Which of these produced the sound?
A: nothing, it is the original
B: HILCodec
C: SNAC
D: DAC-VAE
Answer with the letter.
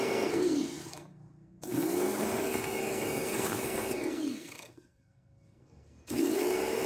C